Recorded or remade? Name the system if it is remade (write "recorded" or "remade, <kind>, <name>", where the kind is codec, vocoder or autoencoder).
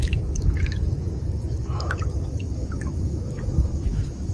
remade, autoencoder, DAC-VAE